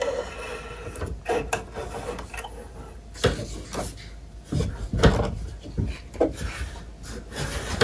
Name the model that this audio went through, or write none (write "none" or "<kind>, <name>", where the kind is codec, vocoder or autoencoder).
none